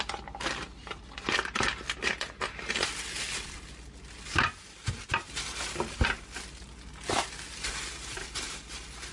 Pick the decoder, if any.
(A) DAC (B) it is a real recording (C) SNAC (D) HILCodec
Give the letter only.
B